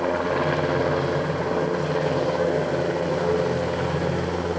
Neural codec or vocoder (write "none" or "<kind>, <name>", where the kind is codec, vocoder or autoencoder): none